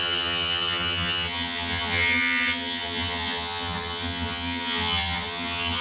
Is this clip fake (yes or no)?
yes